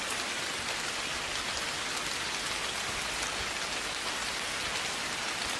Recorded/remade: recorded